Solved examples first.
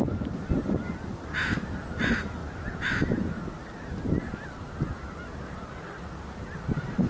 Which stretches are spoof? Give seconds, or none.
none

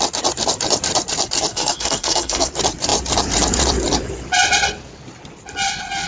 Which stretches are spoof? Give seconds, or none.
1.5-2.5 (codec, SNAC)

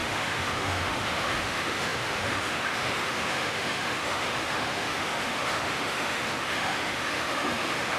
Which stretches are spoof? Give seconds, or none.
0.0-8.0 (autoencoder, DAC-VAE)